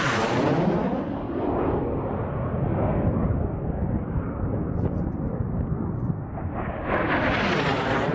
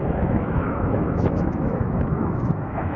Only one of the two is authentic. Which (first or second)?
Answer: first